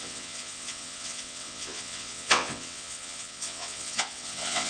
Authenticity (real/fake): fake